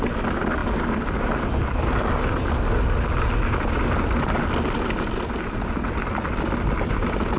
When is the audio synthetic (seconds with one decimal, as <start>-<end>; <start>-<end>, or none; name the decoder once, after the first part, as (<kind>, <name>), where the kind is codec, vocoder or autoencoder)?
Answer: none